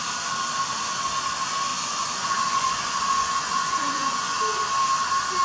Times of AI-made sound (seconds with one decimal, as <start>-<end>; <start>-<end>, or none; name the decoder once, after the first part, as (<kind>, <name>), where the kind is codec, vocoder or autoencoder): 1.7-4.4 (vocoder, Vocos)